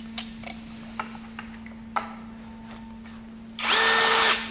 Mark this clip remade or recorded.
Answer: recorded